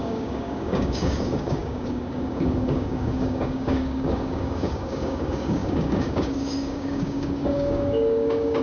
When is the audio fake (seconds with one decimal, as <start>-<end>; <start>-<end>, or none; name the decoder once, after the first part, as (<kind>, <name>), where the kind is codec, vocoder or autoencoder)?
0.0-8.6 (codec, DAC)